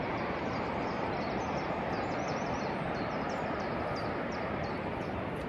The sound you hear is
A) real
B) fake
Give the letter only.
A